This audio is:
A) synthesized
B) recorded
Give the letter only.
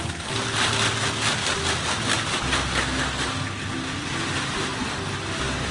B